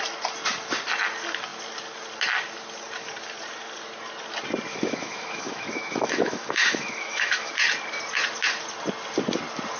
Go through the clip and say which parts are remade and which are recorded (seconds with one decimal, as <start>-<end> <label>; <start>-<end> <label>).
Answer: 0.0-4.7 recorded; 4.7-7.5 remade; 7.5-9.8 recorded